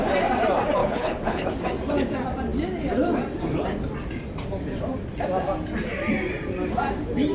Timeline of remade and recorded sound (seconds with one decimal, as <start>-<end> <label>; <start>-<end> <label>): 0.0-0.8 recorded; 0.8-1.5 remade; 1.5-7.3 recorded